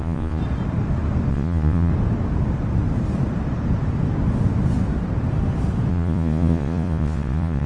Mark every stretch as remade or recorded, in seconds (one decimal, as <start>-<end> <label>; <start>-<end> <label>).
0.0-0.4 remade; 0.4-1.3 recorded; 1.3-1.9 remade; 1.9-5.9 recorded; 5.9-7.7 remade